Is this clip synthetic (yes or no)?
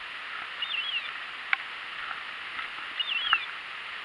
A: no